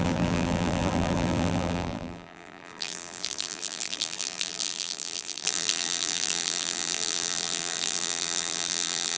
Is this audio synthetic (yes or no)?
yes